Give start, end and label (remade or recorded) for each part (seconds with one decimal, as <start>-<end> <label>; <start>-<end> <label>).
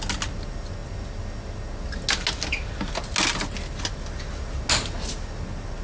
0.0-5.8 recorded